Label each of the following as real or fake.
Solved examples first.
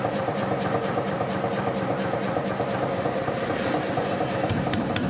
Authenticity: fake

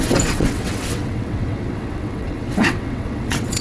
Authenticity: fake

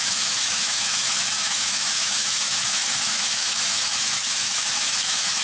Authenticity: fake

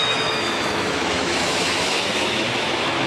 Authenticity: fake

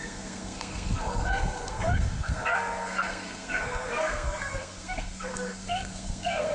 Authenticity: fake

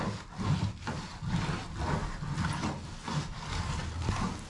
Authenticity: real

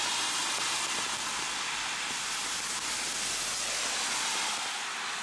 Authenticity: real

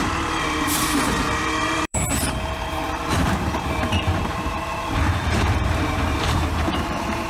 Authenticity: fake